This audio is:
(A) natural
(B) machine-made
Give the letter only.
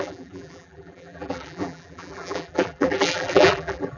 B